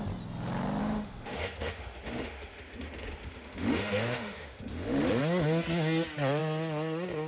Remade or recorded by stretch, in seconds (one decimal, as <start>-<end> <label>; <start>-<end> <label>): 0.0-0.8 recorded; 0.8-5.2 remade; 5.2-7.3 recorded